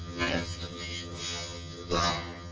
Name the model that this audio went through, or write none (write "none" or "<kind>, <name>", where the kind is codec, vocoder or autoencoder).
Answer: vocoder, HiFi-GAN